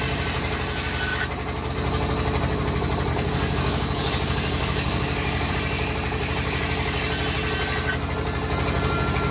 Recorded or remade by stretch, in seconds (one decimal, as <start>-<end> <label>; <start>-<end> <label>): 0.0-3.1 recorded; 3.1-5.5 remade; 5.5-9.3 recorded